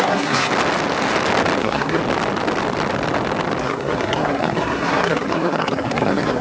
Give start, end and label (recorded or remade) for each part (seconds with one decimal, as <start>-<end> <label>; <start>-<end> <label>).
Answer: 0.0-0.5 remade; 0.5-1.6 recorded; 1.6-2.0 remade; 2.0-3.6 recorded; 3.6-6.4 remade